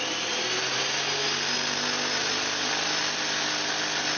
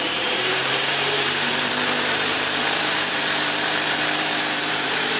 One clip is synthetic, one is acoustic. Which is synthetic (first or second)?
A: second